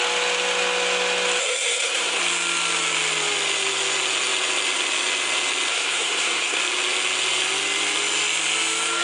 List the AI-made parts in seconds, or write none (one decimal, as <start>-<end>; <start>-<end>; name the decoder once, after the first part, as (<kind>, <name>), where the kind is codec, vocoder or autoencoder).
1.4-2.2 (codec, SNAC); 5.7-6.6